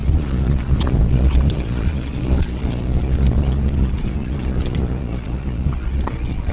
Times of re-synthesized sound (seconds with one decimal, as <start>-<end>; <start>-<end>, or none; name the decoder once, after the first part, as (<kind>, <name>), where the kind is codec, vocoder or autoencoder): 0.0-6.5 (vocoder, Vocos)